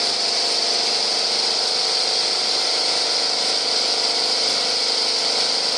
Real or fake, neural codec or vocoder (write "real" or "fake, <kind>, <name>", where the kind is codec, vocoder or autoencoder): real